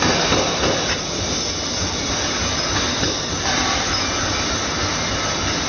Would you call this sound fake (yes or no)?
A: no